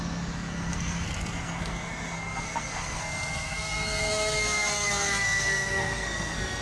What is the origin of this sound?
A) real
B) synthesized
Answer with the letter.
B